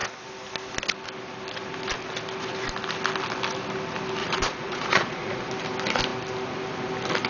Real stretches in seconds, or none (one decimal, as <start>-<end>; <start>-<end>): 0.0-4.2; 5.5-7.3